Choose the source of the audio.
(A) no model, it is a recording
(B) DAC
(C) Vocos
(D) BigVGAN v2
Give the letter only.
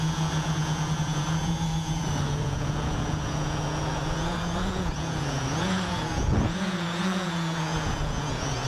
C